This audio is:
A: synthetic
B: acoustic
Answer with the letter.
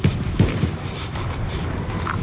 B